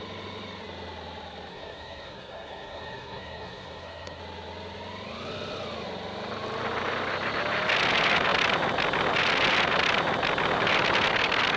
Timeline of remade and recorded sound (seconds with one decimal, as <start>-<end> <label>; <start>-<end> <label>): 0.0-1.5 recorded; 1.5-4.2 remade; 4.2-11.6 recorded